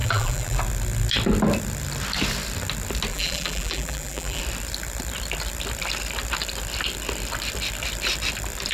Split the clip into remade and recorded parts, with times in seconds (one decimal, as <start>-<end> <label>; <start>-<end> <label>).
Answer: 0.0-0.6 remade; 0.6-3.1 recorded; 3.1-4.4 remade; 4.4-8.7 recorded